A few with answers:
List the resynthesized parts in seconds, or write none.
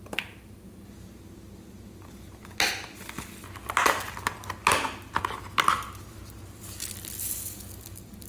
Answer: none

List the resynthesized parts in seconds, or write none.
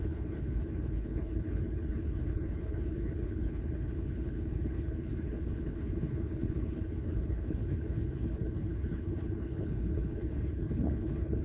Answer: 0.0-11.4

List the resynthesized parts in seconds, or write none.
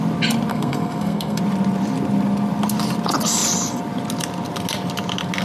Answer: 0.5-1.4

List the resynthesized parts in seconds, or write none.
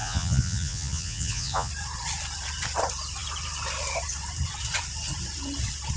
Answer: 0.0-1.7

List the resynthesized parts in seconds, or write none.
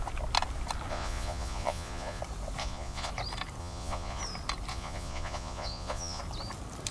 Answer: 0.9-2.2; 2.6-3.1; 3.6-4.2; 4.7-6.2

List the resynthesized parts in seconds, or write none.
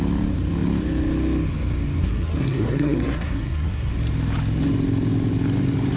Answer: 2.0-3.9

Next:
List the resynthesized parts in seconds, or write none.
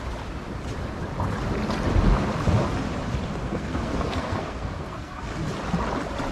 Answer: 3.4-5.2